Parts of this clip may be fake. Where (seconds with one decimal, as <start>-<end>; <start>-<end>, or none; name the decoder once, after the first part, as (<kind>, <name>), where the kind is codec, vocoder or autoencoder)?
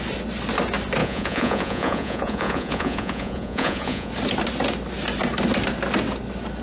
1.0-4.1 (vocoder, Vocos)